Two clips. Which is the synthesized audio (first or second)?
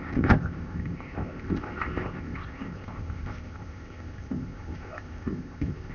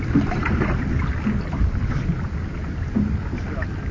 first